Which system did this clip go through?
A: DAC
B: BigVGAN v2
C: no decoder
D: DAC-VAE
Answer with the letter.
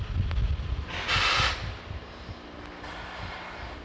C